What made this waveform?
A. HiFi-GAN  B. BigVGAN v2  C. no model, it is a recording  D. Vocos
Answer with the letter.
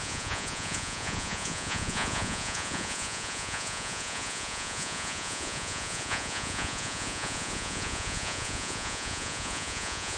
D